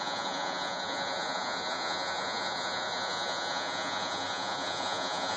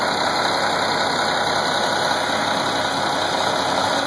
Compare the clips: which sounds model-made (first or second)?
first